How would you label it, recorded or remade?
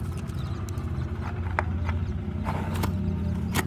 recorded